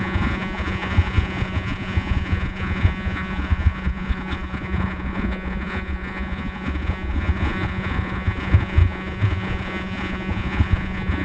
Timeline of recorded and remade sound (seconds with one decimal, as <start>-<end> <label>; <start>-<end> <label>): 0.0-11.2 remade